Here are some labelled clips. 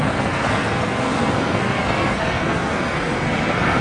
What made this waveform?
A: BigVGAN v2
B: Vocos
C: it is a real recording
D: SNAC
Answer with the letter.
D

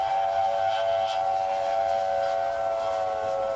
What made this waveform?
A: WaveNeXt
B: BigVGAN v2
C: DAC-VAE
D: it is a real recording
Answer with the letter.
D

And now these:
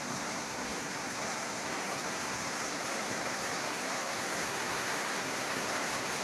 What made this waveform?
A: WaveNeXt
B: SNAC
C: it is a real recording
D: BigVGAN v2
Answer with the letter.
B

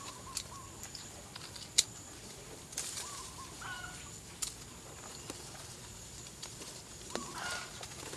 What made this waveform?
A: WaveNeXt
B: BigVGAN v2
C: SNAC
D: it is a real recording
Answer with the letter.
B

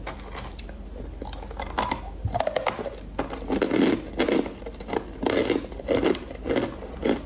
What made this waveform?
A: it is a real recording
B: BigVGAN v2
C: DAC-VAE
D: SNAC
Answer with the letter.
A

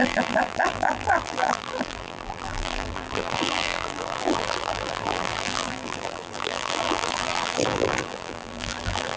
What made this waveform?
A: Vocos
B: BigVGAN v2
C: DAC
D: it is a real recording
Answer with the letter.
B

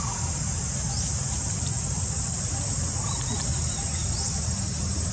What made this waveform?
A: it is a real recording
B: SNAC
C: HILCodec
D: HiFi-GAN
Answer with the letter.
A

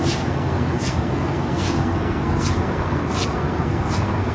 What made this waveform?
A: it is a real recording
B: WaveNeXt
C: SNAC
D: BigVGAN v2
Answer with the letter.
C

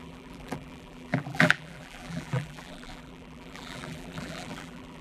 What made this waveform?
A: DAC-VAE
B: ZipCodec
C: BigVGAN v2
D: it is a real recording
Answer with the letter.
C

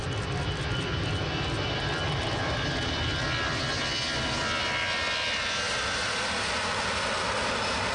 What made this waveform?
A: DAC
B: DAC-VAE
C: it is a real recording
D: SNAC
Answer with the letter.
C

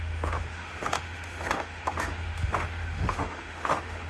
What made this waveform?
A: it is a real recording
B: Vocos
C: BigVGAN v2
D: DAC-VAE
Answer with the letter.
D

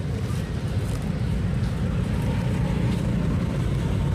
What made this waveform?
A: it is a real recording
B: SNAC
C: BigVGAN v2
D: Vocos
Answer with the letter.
A